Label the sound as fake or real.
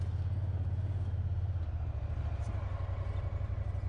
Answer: real